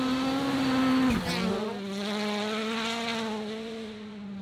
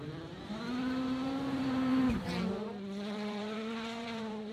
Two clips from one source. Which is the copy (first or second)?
second